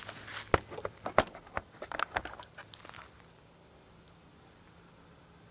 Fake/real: real